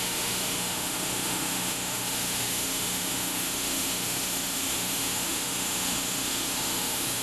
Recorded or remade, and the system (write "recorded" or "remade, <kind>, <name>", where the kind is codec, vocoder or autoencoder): remade, autoencoder, DAC-VAE